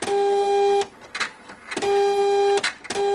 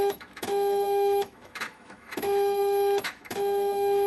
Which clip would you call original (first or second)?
first